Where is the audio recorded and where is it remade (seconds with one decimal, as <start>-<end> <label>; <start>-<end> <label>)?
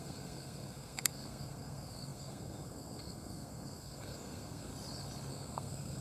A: 0.0-4.7 remade; 4.7-5.3 recorded; 5.3-6.0 remade